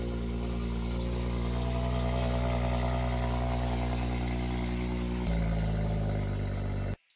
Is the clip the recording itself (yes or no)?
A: yes